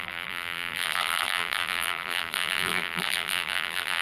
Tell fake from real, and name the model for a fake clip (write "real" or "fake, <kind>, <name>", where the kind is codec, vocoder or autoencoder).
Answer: fake, vocoder, BigVGAN v2